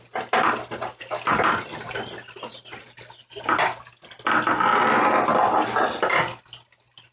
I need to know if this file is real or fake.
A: real